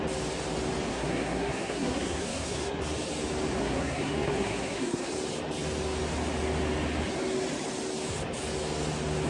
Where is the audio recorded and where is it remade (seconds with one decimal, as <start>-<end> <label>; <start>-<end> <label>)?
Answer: 0.0-0.9 recorded; 0.9-2.8 remade; 2.8-3.6 recorded; 3.6-5.1 remade; 5.1-9.3 recorded

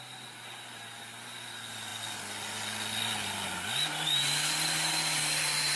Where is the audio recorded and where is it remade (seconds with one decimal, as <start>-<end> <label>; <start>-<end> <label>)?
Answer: 0.0-5.8 recorded

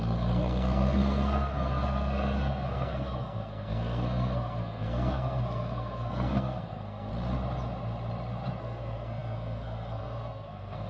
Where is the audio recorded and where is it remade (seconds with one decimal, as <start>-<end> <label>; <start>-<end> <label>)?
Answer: 0.0-7.1 remade; 7.1-8.6 recorded; 8.6-10.9 remade

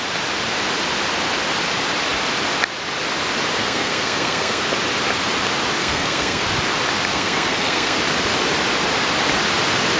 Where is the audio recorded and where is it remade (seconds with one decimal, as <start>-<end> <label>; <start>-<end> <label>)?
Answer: 0.0-3.6 recorded; 3.6-4.6 remade; 4.6-5.8 recorded; 5.8-6.4 remade; 6.4-7.1 recorded; 7.1-8.0 remade; 8.0-10.0 recorded

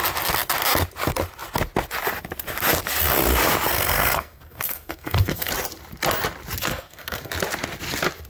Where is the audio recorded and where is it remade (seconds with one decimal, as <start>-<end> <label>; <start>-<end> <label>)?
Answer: 0.0-3.7 recorded; 3.7-5.5 remade; 5.5-6.6 recorded; 6.6-7.3 remade; 7.3-8.3 recorded